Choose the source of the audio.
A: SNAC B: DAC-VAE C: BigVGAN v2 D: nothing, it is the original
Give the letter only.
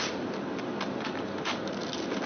D